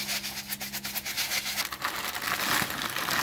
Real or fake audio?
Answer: real